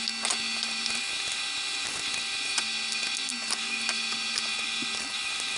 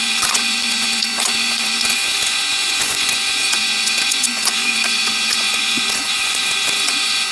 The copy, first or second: second